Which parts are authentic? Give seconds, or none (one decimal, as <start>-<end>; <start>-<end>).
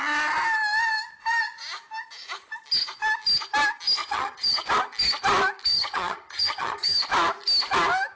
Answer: 0.0-4.0; 4.7-5.7; 7.0-8.2